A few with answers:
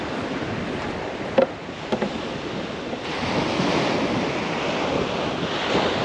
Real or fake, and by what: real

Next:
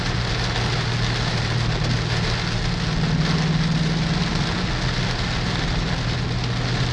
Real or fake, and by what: real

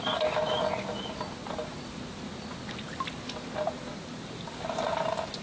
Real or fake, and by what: real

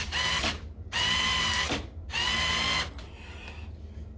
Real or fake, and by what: real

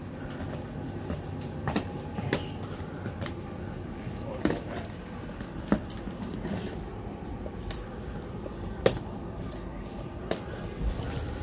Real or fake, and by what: real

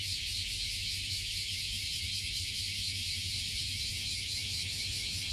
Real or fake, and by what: fake, autoencoder, DAC-VAE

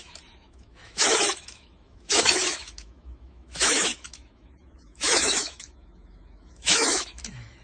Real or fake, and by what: fake, autoencoder, DAC-VAE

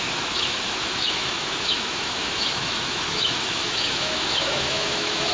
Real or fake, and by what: fake, autoencoder, DAC-VAE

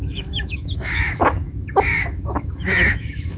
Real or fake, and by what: fake, autoencoder, DAC-VAE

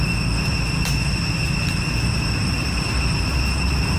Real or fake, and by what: real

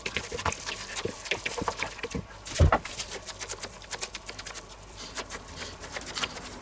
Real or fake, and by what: real